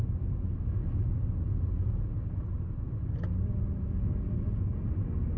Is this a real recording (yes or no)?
yes